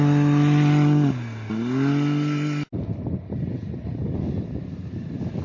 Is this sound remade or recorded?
recorded